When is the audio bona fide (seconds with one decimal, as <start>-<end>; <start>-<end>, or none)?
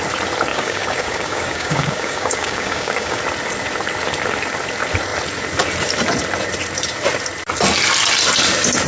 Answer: 0.0-0.5; 3.2-8.9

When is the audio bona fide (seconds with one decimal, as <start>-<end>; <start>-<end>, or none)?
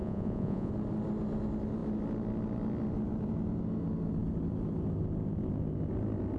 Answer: 0.7-6.4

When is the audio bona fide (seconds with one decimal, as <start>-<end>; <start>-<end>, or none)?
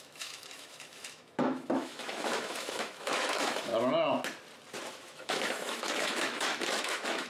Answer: 3.7-4.9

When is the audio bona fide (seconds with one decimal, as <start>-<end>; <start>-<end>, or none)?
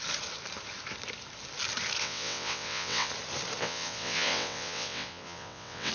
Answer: 0.0-2.0; 3.1-3.6